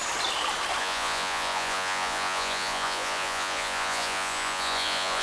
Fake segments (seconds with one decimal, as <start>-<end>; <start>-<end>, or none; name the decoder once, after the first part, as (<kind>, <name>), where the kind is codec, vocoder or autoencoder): 0.8-5.2 (vocoder, Vocos)